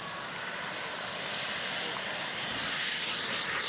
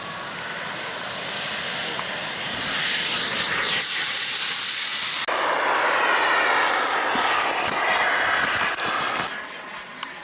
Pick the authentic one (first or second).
second